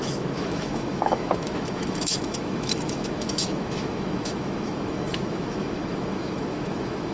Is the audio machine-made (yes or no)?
yes